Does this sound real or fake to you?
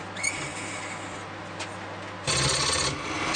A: real